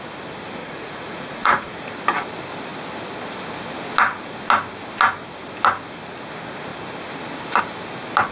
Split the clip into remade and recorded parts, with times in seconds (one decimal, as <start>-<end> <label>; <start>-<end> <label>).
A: 0.0-0.6 recorded; 0.6-1.7 remade; 1.7-8.3 recorded